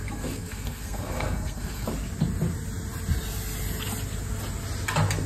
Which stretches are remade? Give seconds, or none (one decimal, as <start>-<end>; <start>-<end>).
0.0-1.9